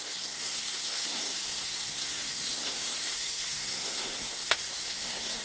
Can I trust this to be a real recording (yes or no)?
no